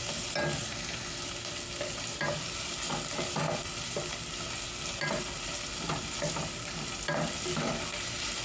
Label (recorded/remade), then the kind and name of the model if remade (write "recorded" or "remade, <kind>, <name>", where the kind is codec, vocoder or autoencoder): recorded